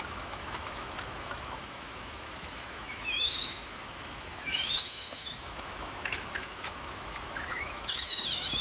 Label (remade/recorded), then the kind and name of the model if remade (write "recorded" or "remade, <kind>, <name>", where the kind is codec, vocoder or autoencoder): remade, autoencoder, DAC-VAE